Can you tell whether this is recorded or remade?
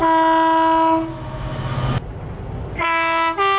recorded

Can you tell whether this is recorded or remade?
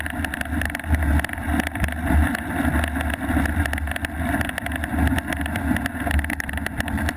recorded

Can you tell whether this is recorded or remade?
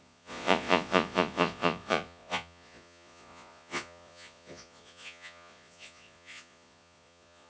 remade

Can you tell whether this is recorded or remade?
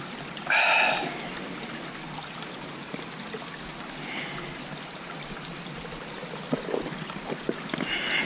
recorded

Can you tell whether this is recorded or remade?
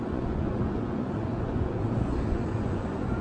remade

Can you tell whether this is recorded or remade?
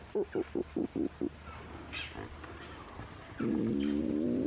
recorded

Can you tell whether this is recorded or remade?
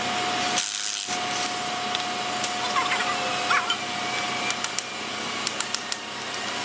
recorded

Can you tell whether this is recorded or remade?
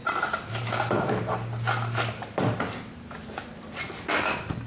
recorded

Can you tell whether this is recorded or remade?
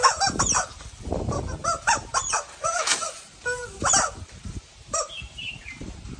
remade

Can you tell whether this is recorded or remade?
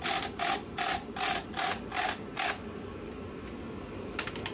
remade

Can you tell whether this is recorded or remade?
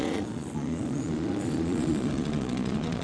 remade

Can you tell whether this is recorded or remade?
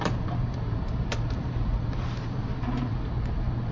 remade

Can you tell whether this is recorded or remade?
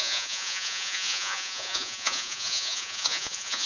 remade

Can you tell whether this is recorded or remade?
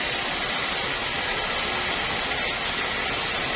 recorded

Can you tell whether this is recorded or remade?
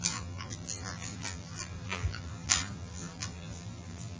remade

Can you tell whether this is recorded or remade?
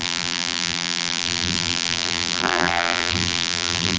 remade